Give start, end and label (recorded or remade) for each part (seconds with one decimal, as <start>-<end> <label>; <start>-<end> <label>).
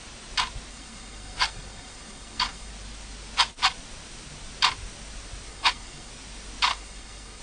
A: 0.0-0.7 recorded; 0.7-2.7 remade; 2.7-5.5 recorded; 5.5-6.1 remade; 6.1-6.7 recorded; 6.7-7.4 remade